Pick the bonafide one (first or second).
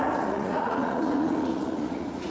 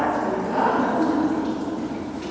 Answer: second